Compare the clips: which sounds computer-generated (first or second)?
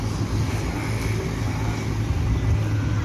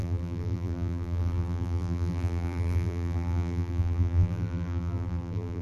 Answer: second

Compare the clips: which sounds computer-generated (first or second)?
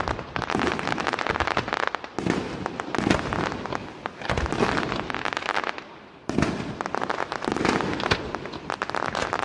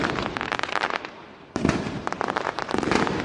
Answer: second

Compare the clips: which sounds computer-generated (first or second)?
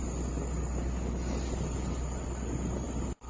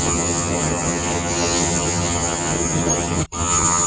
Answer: second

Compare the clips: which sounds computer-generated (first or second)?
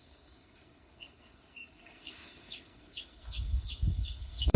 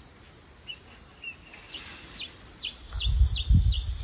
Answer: first